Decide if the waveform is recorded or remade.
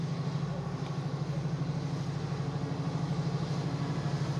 recorded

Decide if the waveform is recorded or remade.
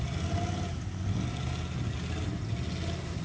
recorded